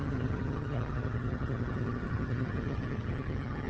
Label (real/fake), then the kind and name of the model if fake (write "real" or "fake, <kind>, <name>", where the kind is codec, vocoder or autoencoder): fake, vocoder, HiFi-GAN